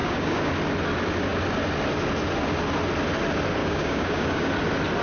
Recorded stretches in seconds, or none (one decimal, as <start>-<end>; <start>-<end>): 0.5-3.6; 4.5-5.0

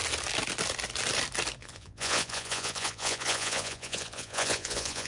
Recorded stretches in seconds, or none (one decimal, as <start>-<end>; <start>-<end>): 0.0-1.6